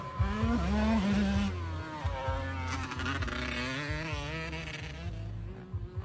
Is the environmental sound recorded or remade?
recorded